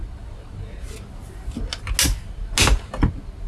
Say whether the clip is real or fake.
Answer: real